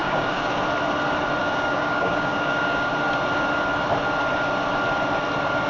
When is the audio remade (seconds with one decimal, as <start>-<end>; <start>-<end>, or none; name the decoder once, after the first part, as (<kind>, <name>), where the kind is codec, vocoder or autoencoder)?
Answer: 0.0-0.6 (codec, DAC); 1.4-2.9